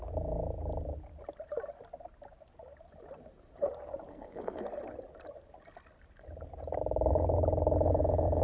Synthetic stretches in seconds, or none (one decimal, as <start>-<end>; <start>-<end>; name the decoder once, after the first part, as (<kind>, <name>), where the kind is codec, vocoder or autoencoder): 4.1-4.6 (codec, SNAC)

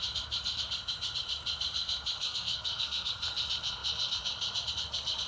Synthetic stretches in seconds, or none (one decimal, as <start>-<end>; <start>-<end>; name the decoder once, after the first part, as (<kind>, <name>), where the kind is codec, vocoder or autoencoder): 2.2-3.1 (codec, SNAC)

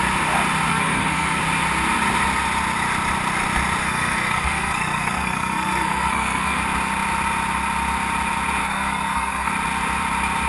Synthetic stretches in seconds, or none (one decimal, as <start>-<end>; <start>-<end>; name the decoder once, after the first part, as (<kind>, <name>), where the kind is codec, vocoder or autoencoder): 0.7-1.4 (codec, SNAC); 3.8-6.6; 8.6-9.5

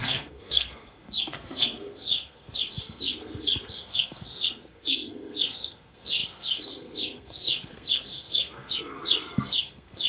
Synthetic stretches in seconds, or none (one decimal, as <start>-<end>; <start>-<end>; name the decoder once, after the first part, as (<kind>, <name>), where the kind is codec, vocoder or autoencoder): 0.0-10.1 (codec, SNAC)